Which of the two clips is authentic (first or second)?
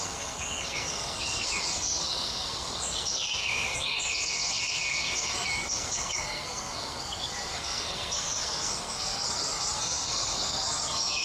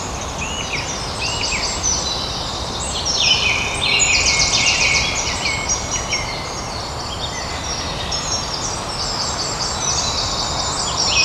second